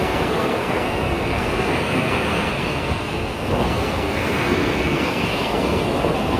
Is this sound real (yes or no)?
no